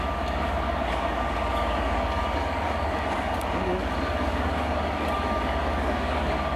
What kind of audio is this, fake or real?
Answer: fake